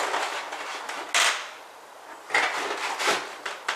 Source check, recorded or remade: recorded